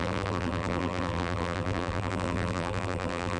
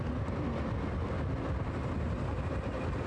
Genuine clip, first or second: second